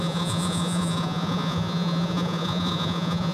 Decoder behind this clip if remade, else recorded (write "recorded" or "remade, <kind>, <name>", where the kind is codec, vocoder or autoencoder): remade, vocoder, Vocos